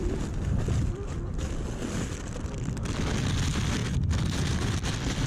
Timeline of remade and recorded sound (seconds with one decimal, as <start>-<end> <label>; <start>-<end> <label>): 0.0-5.3 recorded